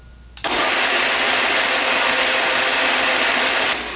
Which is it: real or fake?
real